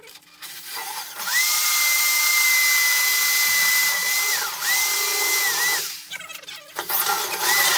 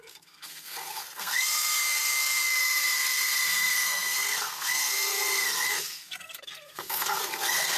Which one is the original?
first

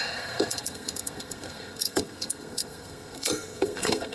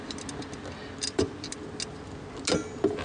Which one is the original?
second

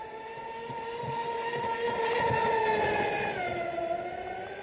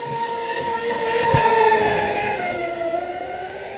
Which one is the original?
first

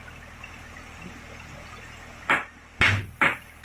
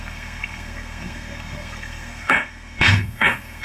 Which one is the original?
first